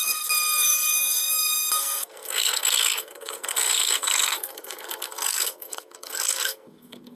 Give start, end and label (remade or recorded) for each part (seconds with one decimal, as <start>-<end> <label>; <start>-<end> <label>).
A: 0.0-7.2 remade

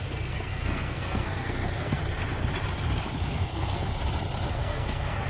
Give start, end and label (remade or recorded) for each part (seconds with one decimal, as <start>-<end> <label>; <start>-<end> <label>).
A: 0.0-2.0 remade; 2.0-3.2 recorded; 3.2-3.9 remade; 3.9-4.5 recorded; 4.5-5.3 remade